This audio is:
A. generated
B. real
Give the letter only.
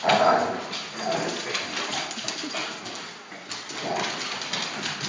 B